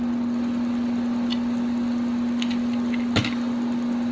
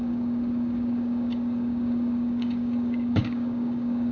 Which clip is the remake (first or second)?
second